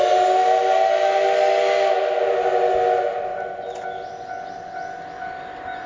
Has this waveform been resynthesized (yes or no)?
no